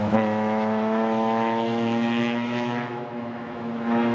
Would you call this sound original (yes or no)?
no